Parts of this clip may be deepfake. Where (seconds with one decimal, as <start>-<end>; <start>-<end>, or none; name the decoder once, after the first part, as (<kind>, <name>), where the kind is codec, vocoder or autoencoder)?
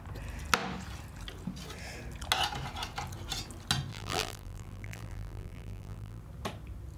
3.9-6.2 (vocoder, BigVGAN v2)